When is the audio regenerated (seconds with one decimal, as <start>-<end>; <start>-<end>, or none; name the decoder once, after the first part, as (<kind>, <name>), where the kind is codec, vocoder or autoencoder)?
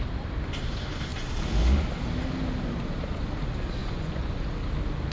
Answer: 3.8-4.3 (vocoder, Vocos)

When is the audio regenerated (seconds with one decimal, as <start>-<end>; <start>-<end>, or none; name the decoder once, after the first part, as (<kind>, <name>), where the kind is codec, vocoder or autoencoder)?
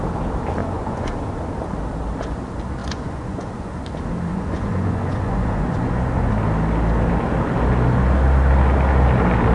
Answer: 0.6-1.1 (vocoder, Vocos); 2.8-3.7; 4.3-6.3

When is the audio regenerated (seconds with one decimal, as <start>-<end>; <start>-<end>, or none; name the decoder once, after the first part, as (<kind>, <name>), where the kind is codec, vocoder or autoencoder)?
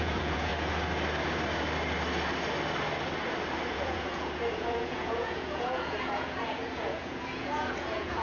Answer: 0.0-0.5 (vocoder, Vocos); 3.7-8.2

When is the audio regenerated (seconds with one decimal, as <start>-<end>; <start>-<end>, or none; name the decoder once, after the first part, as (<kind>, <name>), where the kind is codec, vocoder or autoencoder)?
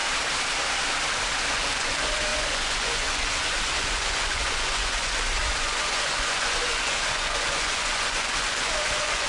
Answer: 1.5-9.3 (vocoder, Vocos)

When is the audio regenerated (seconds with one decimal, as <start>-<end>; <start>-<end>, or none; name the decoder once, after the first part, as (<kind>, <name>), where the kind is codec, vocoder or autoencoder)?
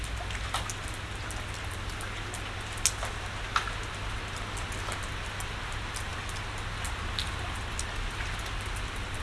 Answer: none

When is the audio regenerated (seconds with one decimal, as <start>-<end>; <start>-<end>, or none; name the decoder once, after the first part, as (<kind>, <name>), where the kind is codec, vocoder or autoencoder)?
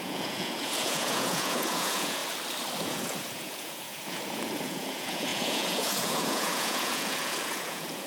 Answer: 0.0-2.2 (vocoder, Vocos); 2.8-8.1